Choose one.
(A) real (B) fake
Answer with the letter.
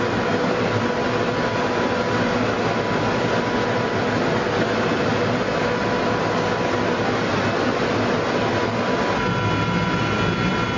A